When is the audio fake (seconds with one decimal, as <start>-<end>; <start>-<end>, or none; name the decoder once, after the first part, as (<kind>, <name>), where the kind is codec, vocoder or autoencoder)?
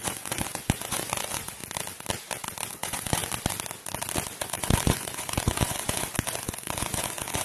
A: 0.0-1.6 (vocoder, Vocos); 2.7-3.2; 4.4-7.4